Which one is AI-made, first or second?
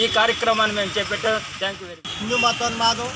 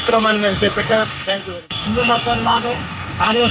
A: second